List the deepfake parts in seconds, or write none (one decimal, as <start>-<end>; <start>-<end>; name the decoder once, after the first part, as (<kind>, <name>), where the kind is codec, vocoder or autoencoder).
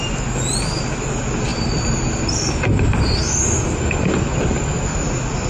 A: none